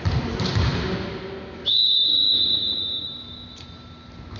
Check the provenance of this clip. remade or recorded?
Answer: recorded